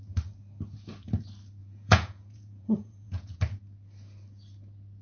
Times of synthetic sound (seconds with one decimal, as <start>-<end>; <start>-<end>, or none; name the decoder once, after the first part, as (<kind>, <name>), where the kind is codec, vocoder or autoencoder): 1.6-3.4 (vocoder, Vocos)